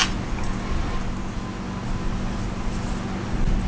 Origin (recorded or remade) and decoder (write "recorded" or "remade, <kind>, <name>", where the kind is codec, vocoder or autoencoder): recorded